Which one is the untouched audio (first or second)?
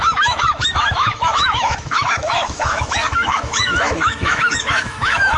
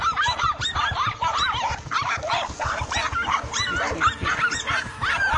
second